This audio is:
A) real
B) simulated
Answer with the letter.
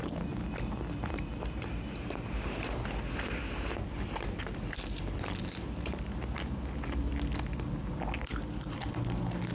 A